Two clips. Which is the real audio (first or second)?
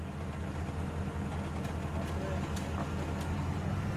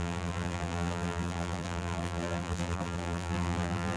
first